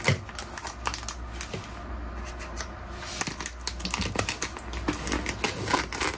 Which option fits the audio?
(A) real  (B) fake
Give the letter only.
A